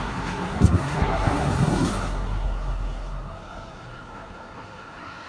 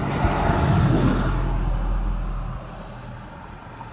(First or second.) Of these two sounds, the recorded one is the second